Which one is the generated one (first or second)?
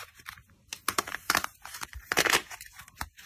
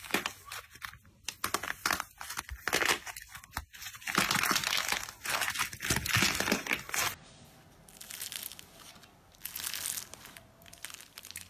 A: first